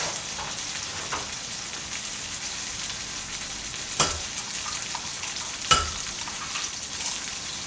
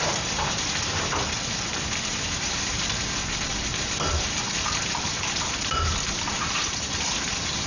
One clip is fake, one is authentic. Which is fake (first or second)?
second